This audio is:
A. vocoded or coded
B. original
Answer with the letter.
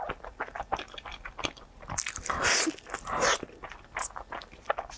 B